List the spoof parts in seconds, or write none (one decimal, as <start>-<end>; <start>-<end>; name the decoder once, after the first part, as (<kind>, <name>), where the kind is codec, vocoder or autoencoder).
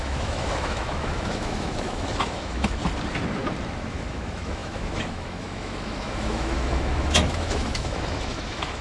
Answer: 0.0-2.8 (autoencoder, DAC-VAE); 3.9-8.8